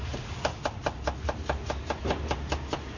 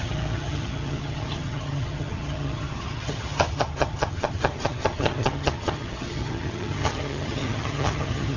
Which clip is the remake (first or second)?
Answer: second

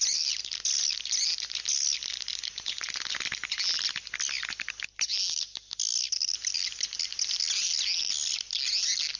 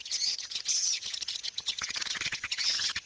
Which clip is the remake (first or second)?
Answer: second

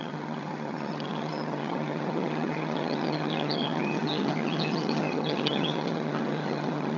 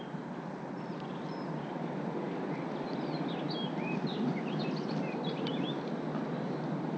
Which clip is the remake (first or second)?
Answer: first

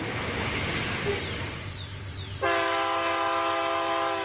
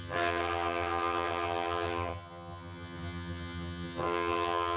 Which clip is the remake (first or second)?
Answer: second